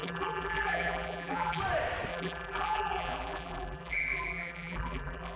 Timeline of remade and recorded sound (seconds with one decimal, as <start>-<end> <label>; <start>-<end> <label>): 0.0-1.6 remade; 1.6-2.1 recorded; 2.1-5.4 remade